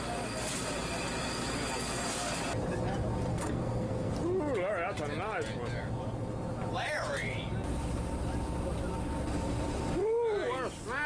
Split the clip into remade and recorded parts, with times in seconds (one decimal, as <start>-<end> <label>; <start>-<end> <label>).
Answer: 0.0-3.3 recorded; 3.3-4.1 remade; 4.1-11.1 recorded

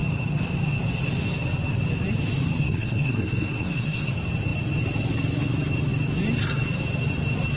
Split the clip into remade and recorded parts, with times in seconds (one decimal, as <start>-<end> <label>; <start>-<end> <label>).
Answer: 0.0-2.6 recorded; 2.6-4.1 remade; 4.1-7.6 recorded

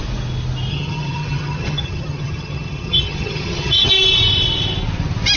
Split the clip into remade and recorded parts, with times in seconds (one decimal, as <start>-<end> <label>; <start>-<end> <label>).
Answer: 0.0-0.7 recorded; 0.7-3.9 remade; 3.9-5.4 recorded

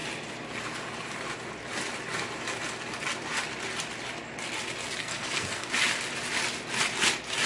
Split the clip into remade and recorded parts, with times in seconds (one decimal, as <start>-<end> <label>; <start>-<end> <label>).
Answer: 0.0-5.0 recorded; 5.0-5.7 remade; 5.7-7.5 recorded